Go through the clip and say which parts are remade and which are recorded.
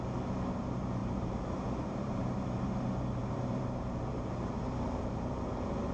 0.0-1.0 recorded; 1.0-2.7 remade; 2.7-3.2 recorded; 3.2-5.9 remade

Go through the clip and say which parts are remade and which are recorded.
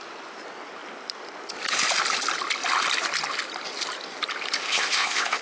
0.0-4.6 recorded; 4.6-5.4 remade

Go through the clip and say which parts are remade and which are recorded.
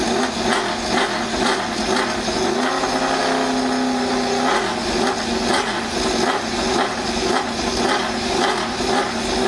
0.0-9.5 recorded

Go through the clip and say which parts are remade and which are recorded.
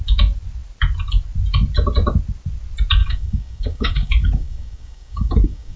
0.0-3.0 recorded; 3.0-5.8 remade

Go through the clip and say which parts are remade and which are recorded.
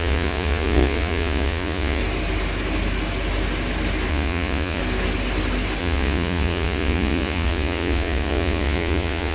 0.0-2.0 remade; 2.0-4.1 recorded; 4.1-4.8 remade; 4.8-5.8 recorded; 5.8-9.3 remade